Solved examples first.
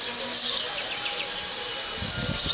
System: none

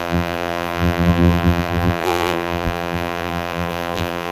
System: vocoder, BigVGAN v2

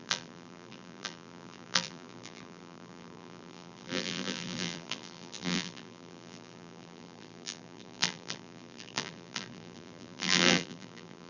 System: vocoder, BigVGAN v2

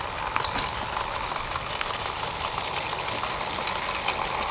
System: none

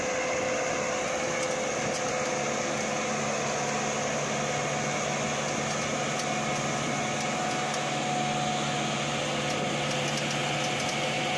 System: none